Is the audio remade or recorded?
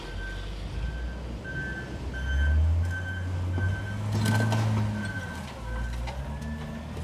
recorded